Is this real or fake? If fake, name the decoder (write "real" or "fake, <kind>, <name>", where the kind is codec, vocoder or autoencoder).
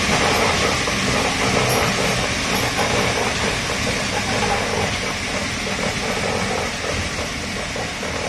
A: real